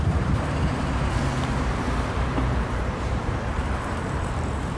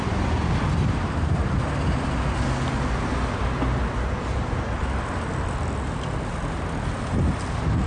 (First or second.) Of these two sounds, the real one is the second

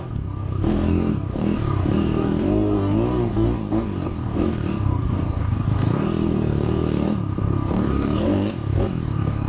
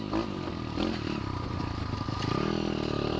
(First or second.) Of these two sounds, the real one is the second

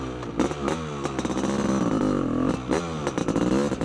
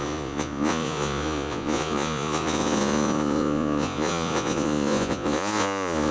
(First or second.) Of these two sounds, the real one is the first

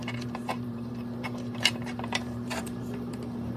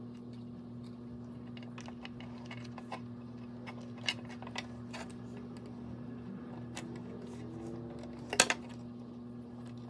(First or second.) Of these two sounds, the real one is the second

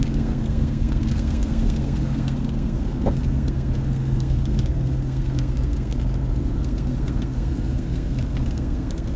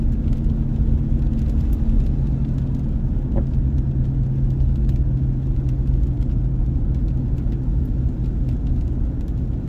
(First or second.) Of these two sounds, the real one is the second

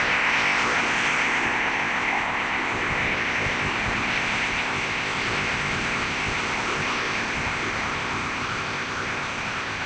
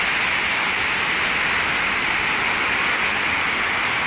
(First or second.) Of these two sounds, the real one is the second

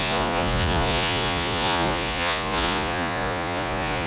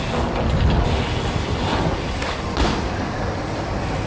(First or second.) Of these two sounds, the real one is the second